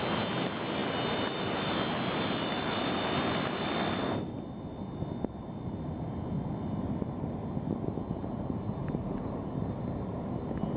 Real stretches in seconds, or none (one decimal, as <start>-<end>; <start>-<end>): 0.0-8.8; 9.4-10.8